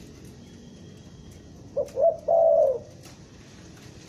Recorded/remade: recorded